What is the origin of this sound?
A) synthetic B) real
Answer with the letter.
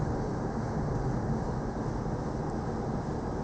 B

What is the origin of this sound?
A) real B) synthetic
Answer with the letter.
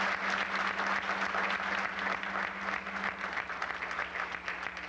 A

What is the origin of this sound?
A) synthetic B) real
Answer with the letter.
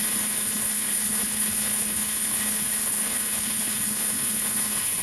A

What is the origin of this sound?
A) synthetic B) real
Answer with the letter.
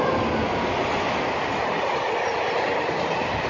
B